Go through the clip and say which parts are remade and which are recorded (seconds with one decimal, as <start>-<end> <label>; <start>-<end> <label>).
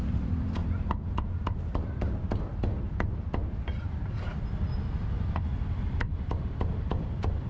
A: 0.0-2.5 remade; 2.5-3.8 recorded; 3.8-4.3 remade; 4.3-7.5 recorded